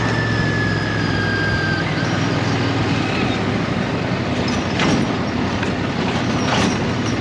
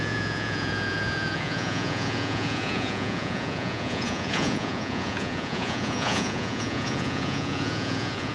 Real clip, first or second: first